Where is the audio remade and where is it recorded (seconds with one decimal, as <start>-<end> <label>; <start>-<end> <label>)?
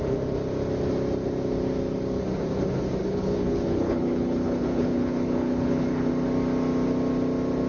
0.0-3.0 recorded; 3.0-6.1 remade; 6.1-7.7 recorded